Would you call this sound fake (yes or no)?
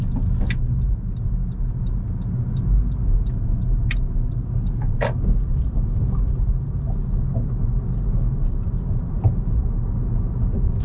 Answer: no